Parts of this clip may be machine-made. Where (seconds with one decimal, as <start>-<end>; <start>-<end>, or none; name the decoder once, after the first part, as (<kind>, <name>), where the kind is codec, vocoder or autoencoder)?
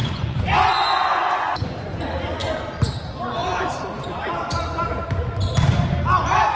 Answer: 0.0-2.0 (vocoder, Vocos)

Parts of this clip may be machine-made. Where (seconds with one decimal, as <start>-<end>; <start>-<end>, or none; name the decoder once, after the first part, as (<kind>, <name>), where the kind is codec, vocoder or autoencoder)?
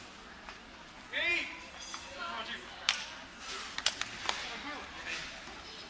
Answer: none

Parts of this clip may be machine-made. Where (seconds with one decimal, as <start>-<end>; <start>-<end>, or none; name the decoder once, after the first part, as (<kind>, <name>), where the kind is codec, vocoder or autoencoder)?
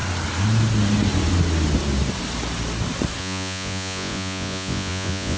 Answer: 3.2-5.4 (vocoder, Vocos)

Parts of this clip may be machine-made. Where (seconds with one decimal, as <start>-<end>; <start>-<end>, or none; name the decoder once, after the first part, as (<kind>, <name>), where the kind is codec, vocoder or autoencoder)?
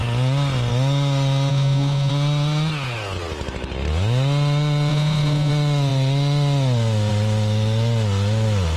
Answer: 1.5-2.1 (vocoder, Vocos); 4.9-5.5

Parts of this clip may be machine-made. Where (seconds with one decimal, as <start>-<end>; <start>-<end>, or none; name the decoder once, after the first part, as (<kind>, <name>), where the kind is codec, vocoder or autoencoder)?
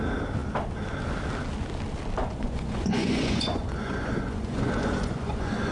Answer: 2.2-5.7 (vocoder, Vocos)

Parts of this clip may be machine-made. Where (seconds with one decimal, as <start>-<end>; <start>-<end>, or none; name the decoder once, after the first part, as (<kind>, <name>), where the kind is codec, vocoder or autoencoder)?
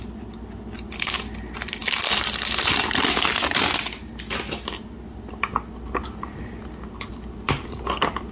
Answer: none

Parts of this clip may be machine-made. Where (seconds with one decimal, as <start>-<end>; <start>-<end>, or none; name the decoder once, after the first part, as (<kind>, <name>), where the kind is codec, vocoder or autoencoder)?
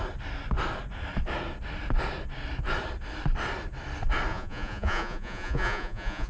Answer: 4.3-6.3 (vocoder, Vocos)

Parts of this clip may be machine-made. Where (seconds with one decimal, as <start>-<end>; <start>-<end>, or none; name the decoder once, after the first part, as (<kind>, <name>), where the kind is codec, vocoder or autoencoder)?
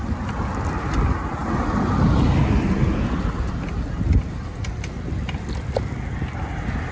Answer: none